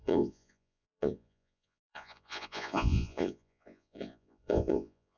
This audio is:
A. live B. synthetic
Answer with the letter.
B